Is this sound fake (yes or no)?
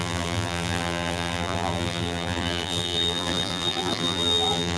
yes